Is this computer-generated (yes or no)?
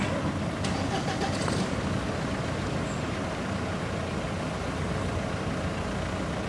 no